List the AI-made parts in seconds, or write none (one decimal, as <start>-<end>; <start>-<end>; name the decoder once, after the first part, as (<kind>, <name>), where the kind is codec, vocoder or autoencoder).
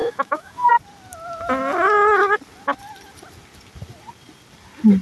0.0-0.7 (autoencoder, DAC-VAE)